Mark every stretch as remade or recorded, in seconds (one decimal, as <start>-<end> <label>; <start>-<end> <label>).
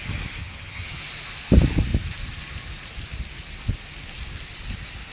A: 0.0-0.4 recorded; 0.4-1.0 remade; 1.0-5.1 recorded